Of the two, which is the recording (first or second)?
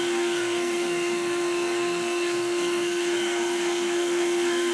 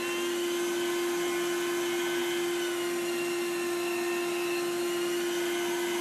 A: second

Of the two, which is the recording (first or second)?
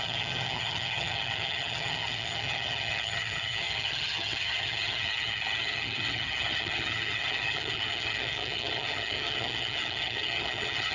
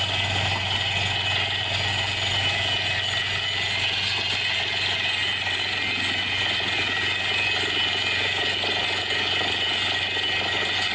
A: second